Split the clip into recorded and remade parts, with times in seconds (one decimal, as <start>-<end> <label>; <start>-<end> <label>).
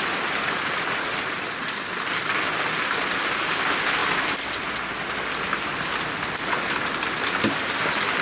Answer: 0.0-8.2 recorded